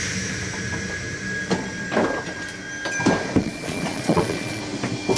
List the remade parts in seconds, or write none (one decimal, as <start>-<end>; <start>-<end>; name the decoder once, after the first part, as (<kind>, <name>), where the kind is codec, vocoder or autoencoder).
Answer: 3.4-4.6 (vocoder, Vocos)